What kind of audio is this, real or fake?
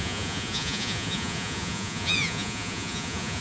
fake